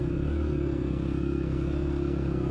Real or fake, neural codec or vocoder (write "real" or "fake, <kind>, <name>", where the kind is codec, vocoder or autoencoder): fake, codec, SNAC